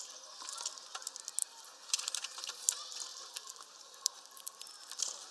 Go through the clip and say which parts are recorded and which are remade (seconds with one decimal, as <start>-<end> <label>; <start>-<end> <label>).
0.0-1.4 recorded; 1.4-2.6 remade; 2.6-3.1 recorded; 3.1-4.6 remade; 4.6-5.3 recorded